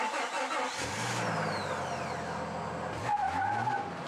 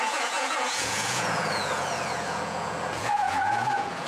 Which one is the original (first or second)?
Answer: first